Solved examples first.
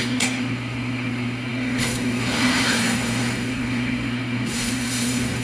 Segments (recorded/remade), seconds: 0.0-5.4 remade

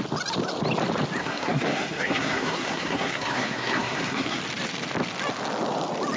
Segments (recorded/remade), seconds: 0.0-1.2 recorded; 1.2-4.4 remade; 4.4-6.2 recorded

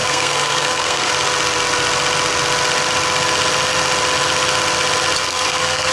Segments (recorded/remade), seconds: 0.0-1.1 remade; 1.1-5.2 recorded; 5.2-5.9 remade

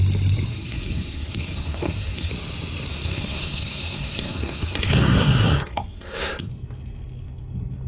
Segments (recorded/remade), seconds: 0.0-0.5 recorded; 0.5-2.3 remade; 2.3-2.9 recorded; 2.9-6.5 remade; 6.5-7.9 recorded

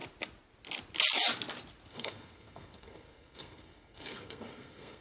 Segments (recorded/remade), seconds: 0.0-1.9 recorded; 1.9-5.0 remade

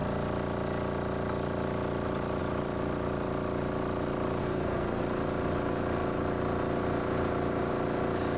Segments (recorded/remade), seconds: 0.0-4.4 recorded; 4.4-5.0 remade; 5.0-8.4 recorded

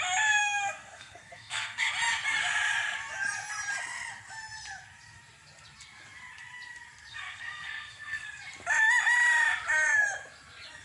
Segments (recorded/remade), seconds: 0.0-0.4 recorded; 0.4-1.9 remade; 1.9-7.1 recorded; 7.1-8.4 remade; 8.4-10.8 recorded